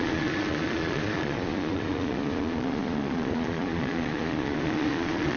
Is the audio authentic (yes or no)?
no